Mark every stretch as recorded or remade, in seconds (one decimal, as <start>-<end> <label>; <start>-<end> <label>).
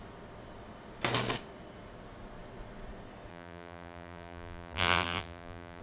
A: 0.0-3.3 recorded; 3.3-5.8 remade